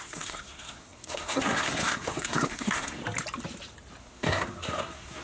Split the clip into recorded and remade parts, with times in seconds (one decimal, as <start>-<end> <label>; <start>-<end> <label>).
0.0-3.0 remade; 3.0-4.0 recorded; 4.0-5.2 remade